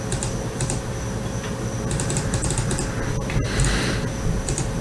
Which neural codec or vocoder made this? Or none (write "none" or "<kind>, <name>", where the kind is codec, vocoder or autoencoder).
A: none